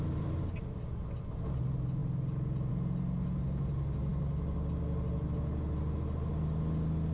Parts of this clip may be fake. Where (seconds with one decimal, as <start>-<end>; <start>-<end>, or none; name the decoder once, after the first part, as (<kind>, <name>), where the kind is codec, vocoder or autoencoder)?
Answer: none